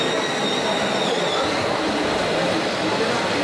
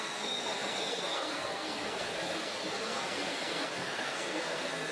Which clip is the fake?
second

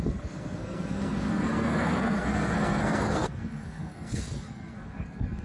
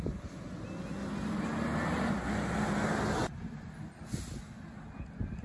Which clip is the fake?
first